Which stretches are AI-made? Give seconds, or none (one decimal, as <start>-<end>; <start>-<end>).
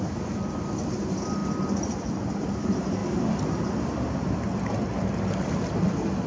none